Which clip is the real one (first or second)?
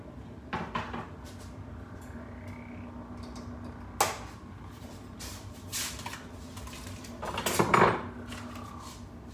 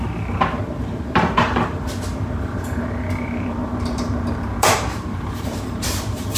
first